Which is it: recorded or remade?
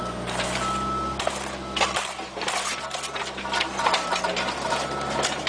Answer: recorded